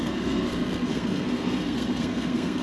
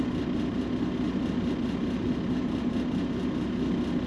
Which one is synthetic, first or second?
first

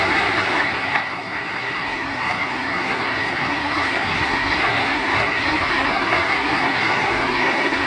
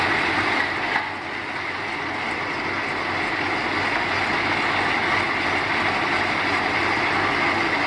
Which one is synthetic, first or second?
first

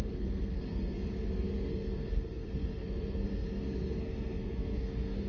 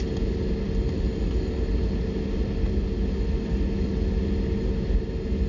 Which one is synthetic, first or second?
first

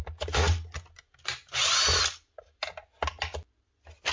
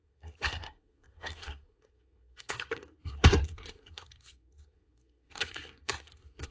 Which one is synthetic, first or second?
second